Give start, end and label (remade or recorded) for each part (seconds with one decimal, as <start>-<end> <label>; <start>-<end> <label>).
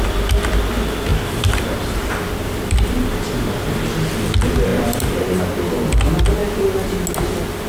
0.0-1.1 recorded; 1.1-3.5 remade; 3.5-4.7 recorded; 4.7-5.4 remade; 5.4-7.7 recorded